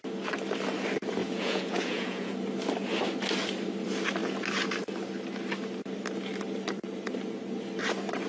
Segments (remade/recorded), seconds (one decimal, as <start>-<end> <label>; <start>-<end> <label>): 0.0-1.2 recorded; 1.2-2.3 remade; 2.3-8.3 recorded